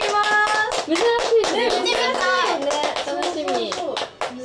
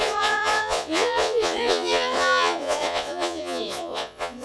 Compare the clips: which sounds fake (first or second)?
second